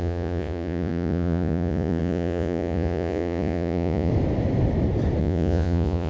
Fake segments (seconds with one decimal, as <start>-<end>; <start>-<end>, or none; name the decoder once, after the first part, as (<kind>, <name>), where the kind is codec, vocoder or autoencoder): 0.0-4.1 (vocoder, Vocos); 5.2-6.1